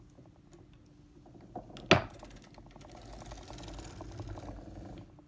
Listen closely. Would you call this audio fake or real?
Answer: real